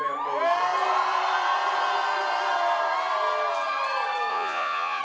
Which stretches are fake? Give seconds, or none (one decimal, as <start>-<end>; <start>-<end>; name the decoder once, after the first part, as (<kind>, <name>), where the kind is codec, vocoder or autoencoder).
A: 4.3-5.0 (vocoder, Vocos)